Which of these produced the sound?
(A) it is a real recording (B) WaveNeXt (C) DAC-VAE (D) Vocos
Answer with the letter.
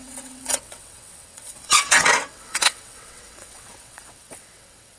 B